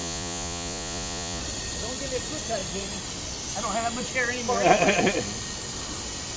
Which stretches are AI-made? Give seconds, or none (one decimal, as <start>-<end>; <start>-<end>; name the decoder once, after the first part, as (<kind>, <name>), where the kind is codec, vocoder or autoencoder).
0.0-1.4 (vocoder, Vocos)